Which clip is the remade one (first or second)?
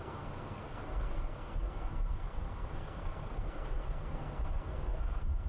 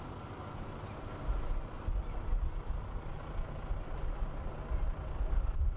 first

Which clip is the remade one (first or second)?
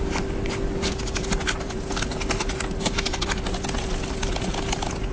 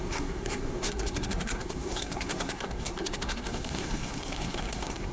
second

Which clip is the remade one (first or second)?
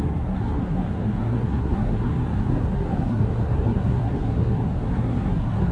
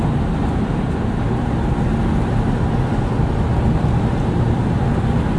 first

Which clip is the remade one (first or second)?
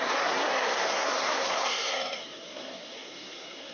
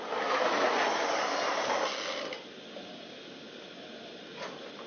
first